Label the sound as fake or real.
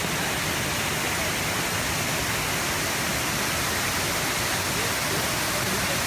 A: real